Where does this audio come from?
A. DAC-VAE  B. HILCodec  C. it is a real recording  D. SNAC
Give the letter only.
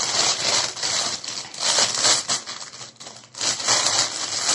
C